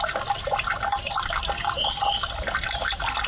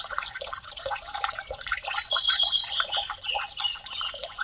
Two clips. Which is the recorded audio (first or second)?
first